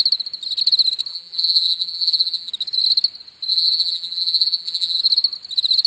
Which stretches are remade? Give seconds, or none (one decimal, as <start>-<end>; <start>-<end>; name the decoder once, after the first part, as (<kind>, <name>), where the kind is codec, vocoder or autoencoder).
1.1-2.5 (vocoder, BigVGAN v2); 3.5-5.0